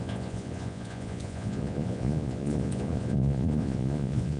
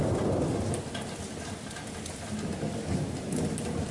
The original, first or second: second